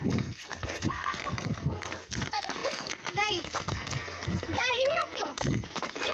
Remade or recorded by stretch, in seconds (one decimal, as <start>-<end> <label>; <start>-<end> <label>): 0.0-6.1 remade